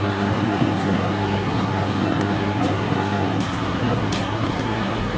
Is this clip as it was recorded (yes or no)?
no